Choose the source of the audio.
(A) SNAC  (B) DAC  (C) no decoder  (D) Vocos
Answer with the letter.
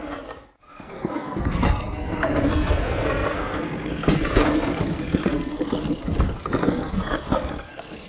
A